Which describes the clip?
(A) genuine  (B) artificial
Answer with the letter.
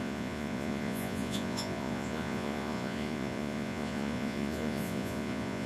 B